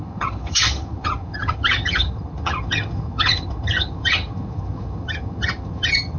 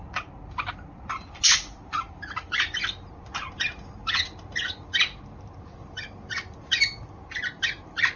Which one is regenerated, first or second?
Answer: first